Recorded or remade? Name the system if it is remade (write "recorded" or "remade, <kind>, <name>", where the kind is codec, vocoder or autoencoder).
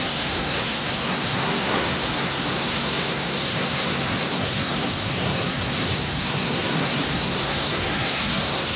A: remade, codec, SNAC